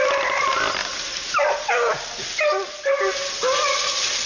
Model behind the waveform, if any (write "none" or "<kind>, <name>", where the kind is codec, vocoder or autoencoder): none